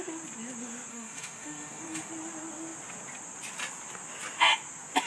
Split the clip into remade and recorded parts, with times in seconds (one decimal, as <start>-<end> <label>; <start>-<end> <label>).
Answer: 0.0-0.9 recorded; 0.9-2.1 remade; 2.1-5.1 recorded